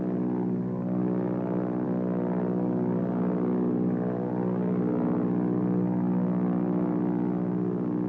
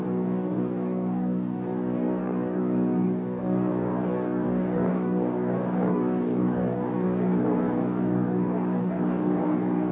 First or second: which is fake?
second